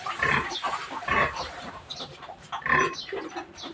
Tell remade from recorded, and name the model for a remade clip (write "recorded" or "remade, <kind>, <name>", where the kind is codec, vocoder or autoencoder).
remade, vocoder, BigVGAN v2